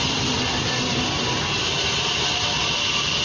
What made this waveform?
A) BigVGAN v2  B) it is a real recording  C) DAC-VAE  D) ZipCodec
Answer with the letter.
B